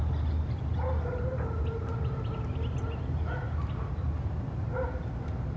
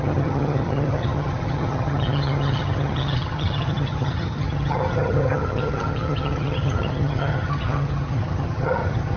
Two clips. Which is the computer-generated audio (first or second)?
second